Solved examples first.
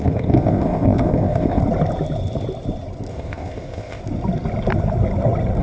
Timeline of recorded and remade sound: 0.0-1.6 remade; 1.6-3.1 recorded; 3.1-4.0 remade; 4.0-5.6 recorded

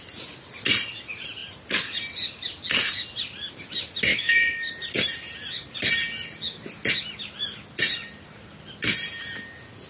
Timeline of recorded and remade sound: 0.0-4.1 recorded; 4.1-4.7 remade; 4.7-9.9 recorded

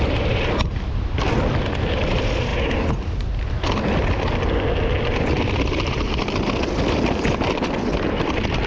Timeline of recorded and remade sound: 0.0-8.7 recorded

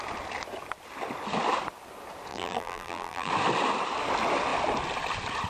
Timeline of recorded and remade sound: 0.0-2.3 recorded; 2.3-3.3 remade; 3.3-5.5 recorded

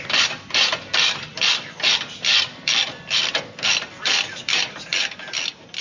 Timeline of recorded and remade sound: 0.0-5.8 remade

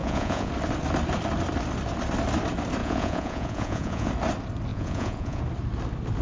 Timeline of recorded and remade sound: 0.0-0.5 remade; 0.5-2.8 recorded; 2.8-4.1 remade; 4.1-4.7 recorded; 4.7-5.4 remade; 5.4-6.2 recorded

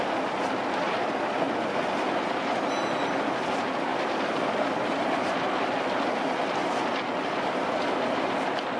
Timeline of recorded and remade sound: 0.0-8.8 recorded